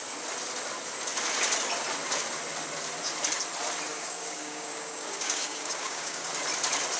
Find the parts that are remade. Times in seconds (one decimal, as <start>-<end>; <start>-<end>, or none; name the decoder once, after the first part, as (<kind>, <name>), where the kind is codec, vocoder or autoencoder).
3.9-6.3 (codec, DAC)